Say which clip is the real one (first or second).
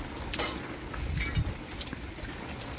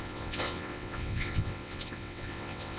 first